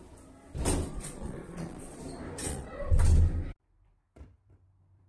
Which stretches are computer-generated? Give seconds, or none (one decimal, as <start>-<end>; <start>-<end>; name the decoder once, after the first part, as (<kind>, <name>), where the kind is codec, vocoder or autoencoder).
0.9-2.0 (vocoder, Vocos); 2.4-2.9